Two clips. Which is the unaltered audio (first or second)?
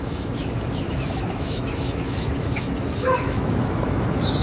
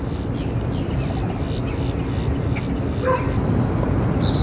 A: second